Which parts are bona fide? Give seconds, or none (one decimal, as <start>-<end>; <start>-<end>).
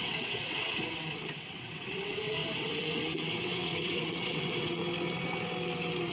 4.8-6.1